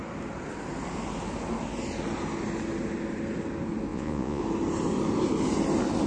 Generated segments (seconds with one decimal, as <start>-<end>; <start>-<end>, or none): 3.9-4.4